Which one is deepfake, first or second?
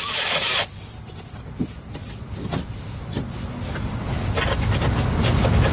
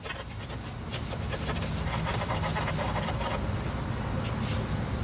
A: first